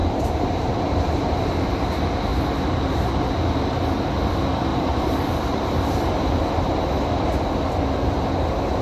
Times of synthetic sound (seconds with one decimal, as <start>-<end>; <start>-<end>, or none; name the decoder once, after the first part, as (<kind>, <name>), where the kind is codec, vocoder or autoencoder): 0.0-1.7 (vocoder, BigVGAN v2); 2.3-3.1; 4.7-6.1